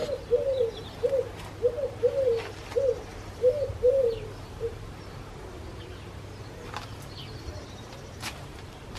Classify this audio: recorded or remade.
recorded